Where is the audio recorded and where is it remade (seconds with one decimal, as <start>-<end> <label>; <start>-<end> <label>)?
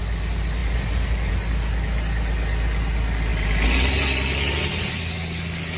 0.0-5.8 recorded